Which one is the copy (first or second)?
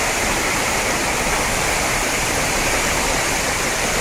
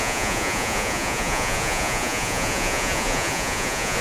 second